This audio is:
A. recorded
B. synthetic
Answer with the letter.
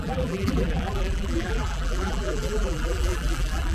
B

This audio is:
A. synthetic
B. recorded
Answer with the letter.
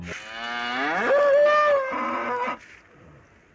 B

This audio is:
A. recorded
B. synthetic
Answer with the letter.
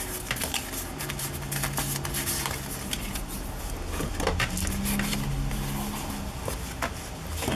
A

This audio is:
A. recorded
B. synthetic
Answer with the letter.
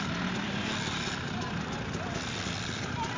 A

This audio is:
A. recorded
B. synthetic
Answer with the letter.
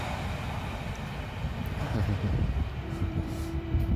B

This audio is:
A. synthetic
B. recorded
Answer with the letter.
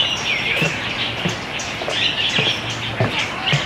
B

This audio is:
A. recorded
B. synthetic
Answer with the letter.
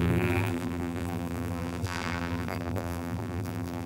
B